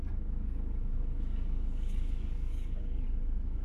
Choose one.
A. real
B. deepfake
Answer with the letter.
B